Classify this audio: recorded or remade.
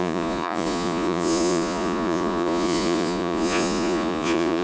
remade